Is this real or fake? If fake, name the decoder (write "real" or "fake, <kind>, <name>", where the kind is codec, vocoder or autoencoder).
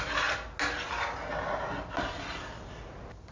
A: real